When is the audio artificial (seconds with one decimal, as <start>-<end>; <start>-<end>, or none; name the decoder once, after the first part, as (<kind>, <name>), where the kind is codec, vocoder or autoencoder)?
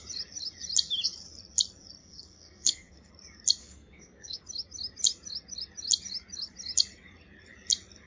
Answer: 2.0-3.1 (codec, SNAC); 3.6-4.4